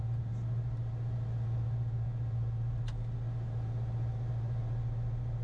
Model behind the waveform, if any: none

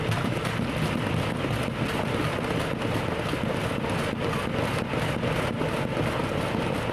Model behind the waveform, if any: none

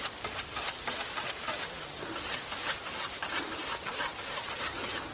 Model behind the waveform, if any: vocoder, BigVGAN v2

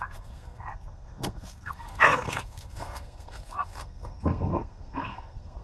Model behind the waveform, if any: codec, SNAC